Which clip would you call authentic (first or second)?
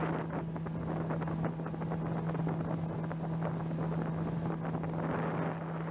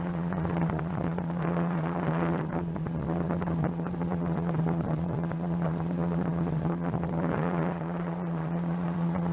first